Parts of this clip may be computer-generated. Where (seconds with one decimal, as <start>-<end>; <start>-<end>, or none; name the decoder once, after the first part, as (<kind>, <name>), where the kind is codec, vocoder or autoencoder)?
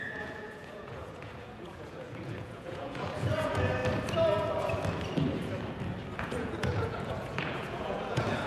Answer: 0.0-3.8 (vocoder, Vocos); 6.2-8.5